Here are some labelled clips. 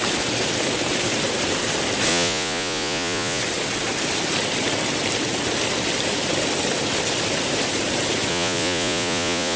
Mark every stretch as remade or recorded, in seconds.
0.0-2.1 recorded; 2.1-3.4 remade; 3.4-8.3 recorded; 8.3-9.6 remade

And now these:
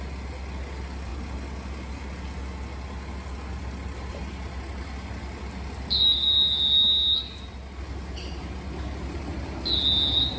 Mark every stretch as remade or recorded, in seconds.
0.0-10.4 recorded

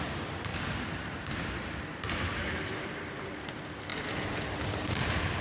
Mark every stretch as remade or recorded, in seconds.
0.0-0.5 remade; 0.5-1.3 recorded; 1.3-1.9 remade; 1.9-2.7 recorded; 2.7-3.9 remade; 3.9-4.7 recorded; 4.7-5.4 remade

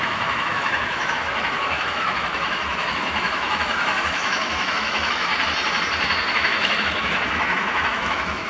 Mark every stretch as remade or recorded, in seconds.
0.0-5.3 remade; 5.3-6.3 recorded; 6.3-8.5 remade

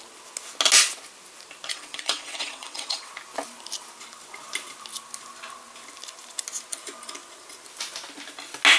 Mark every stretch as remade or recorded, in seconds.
0.0-1.7 recorded; 1.7-3.1 remade; 3.1-8.8 recorded

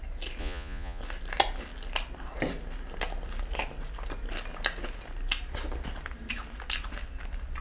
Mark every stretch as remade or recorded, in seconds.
0.0-0.4 recorded; 0.4-1.0 remade; 1.0-7.6 recorded

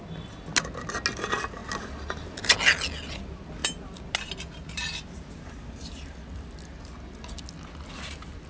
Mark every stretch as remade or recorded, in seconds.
0.0-8.5 recorded

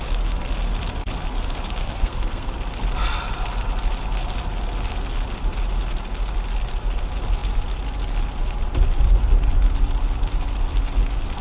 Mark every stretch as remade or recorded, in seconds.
0.0-1.8 recorded; 1.8-2.5 remade; 2.5-11.4 recorded